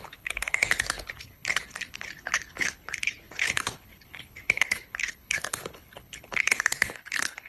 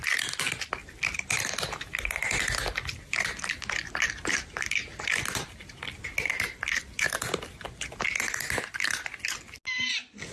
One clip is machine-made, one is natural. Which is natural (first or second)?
second